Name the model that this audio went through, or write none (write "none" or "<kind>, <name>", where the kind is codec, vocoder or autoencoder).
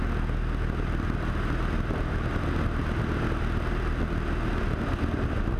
none